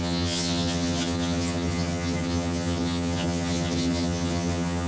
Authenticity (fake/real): fake